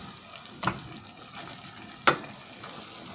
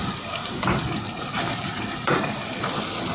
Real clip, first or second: first